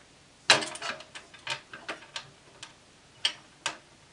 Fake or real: real